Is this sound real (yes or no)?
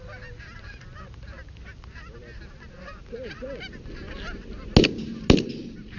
yes